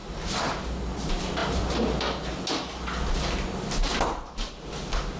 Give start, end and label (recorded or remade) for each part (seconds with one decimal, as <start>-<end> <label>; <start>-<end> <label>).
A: 0.0-0.6 remade; 0.6-5.2 recorded